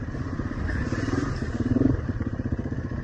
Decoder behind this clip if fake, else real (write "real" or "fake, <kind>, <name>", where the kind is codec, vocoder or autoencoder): fake, vocoder, BigVGAN v2